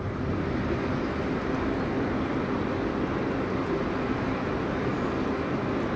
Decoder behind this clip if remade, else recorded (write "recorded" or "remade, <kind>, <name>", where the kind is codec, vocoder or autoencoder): recorded